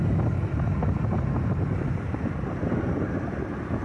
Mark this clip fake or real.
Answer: real